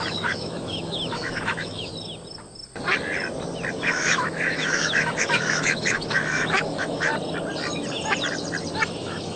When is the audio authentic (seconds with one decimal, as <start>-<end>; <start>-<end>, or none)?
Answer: 1.9-3.7; 7.1-9.0